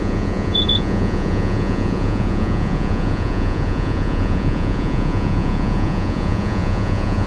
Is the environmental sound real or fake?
fake